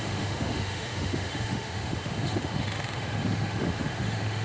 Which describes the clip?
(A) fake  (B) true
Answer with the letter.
A